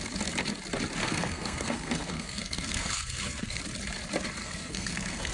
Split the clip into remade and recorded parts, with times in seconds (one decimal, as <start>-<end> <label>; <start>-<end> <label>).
0.0-1.0 recorded; 1.0-3.6 remade; 3.6-4.4 recorded; 4.4-5.3 remade